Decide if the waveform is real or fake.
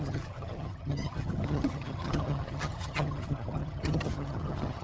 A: fake